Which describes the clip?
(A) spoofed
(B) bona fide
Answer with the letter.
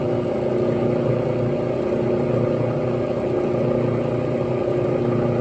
B